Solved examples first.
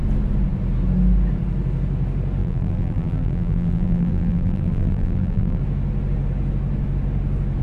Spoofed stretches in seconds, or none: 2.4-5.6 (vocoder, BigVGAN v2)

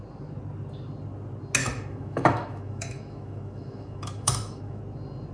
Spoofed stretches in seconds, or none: 1.6-4.8 (autoencoder, DAC-VAE)

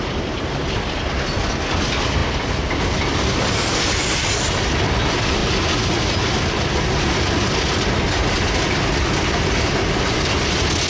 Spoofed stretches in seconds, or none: none

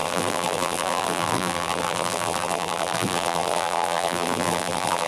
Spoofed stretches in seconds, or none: 0.0-5.1 (vocoder, BigVGAN v2)

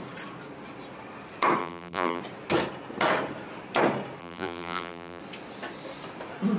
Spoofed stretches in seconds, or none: 1.6-2.2 (vocoder, BigVGAN v2); 4.2-5.2

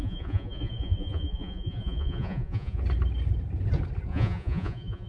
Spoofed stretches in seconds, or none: 0.0-2.8 (vocoder, Vocos); 4.1-5.1